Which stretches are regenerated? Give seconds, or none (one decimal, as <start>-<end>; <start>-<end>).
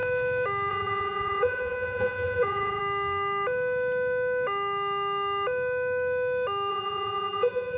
0.7-2.8; 6.7-7.8